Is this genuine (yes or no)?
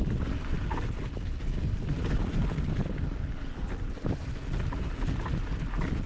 yes